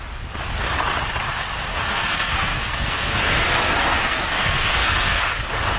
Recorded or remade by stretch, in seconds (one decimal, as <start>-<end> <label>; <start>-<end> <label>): 0.0-1.7 recorded; 1.7-5.2 remade; 5.2-5.8 recorded